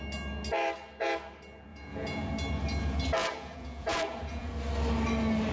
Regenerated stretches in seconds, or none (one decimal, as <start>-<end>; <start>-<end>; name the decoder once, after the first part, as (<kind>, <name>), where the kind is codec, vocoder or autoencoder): 1.7-2.3 (vocoder, Vocos); 3.2-4.5